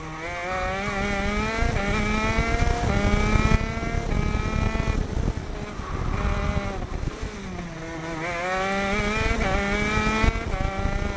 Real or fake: real